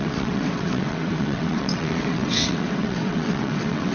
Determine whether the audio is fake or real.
fake